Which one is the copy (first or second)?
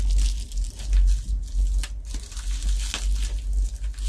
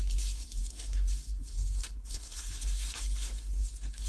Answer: second